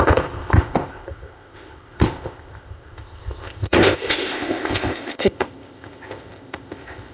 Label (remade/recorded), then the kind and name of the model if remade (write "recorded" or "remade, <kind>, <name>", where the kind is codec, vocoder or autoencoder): remade, codec, ZipCodec